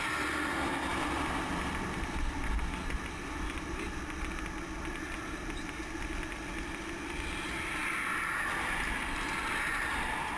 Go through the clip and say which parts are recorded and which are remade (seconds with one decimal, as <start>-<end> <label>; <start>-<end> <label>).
0.0-10.4 recorded